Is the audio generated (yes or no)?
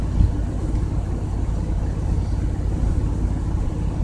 no